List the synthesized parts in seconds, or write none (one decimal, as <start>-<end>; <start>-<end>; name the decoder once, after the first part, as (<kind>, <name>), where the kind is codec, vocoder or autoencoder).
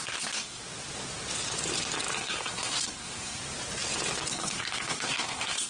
0.0-0.6 (codec, SNAC); 2.1-3.4; 4.3-5.7